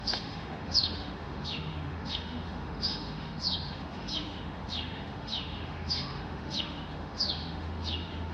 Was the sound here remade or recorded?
remade